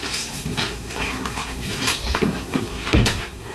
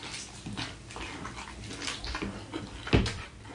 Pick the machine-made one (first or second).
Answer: first